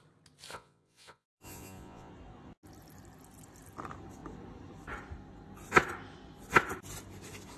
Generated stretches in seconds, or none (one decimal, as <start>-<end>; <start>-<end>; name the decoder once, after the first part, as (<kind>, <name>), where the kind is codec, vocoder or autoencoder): 0.5-2.1 (vocoder, Vocos)